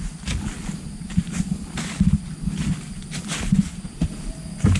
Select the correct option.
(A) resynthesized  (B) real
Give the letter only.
B